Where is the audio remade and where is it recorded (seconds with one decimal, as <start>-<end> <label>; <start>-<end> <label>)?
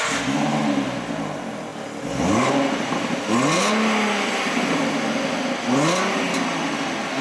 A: 0.0-7.2 recorded